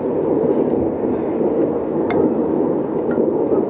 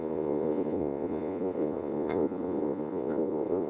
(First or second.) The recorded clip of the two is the first